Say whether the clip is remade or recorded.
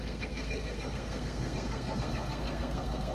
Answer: remade